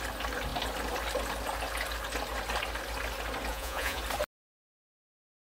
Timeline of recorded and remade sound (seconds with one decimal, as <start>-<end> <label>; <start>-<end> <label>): 0.0-3.5 recorded; 3.5-4.0 remade; 4.0-5.4 recorded